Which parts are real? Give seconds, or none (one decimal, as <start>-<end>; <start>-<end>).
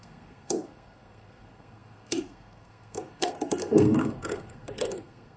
none